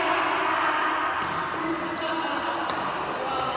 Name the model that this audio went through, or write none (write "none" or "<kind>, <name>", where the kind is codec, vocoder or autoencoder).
none